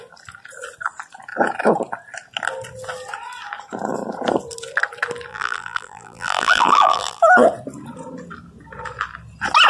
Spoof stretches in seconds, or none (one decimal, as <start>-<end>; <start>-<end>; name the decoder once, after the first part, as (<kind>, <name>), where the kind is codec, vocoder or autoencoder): 5.3-7.2 (vocoder, BigVGAN v2)